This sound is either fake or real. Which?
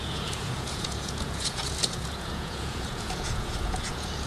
fake